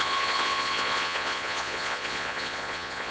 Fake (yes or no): yes